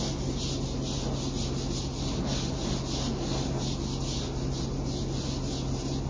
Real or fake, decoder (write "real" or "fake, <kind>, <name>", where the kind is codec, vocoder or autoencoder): real